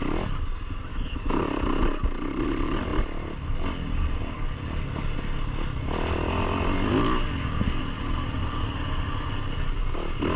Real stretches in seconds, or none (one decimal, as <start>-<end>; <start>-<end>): 0.0-0.9; 1.4-10.4